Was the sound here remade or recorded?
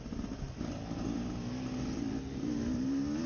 recorded